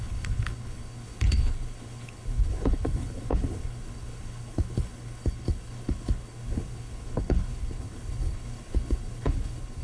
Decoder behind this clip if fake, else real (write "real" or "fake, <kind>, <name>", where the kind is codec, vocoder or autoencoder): fake, codec, HILCodec